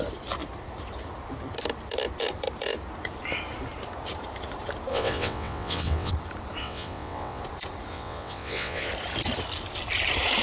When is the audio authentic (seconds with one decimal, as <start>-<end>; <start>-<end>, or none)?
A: 0.0-4.9; 6.1-6.6; 7.4-7.9; 8.9-10.4